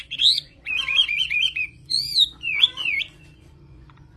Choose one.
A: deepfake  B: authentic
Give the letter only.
A